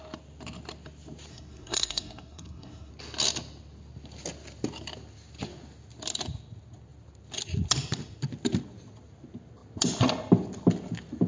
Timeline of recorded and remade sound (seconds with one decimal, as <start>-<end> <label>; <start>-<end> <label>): 0.0-1.3 recorded; 1.3-2.9 remade; 2.9-11.3 recorded

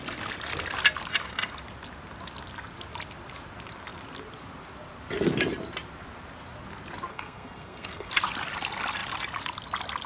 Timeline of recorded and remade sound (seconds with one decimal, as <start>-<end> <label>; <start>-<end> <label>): 0.0-7.1 recorded; 7.1-8.1 remade; 8.1-10.1 recorded

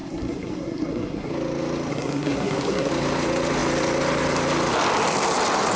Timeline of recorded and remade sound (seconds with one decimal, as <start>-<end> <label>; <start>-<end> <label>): 0.0-1.3 remade; 1.3-1.9 recorded; 1.9-2.9 remade; 2.9-5.8 recorded

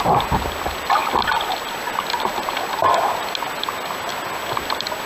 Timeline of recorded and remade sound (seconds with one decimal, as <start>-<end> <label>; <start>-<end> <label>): 0.0-5.1 recorded